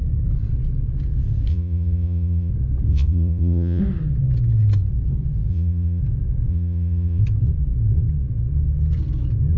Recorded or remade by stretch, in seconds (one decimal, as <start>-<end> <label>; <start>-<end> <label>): 0.0-1.5 recorded; 1.5-2.5 remade; 2.5-2.9 recorded; 2.9-3.8 remade; 3.8-5.5 recorded; 5.5-6.0 remade; 6.0-6.5 recorded; 6.5-7.2 remade; 7.2-9.6 recorded